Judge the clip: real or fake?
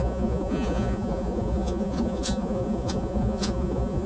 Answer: fake